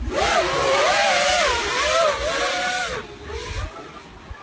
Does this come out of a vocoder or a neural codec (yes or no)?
no